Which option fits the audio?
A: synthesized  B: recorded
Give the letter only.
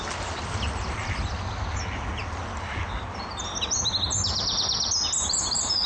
B